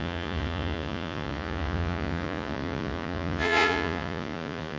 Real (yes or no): no